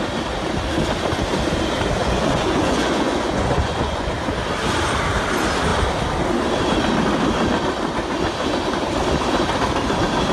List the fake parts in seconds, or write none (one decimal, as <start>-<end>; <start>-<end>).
2.0-4.1